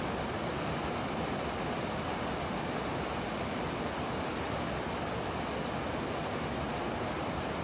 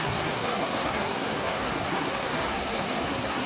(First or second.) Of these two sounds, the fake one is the second